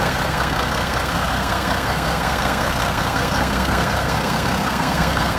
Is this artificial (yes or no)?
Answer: yes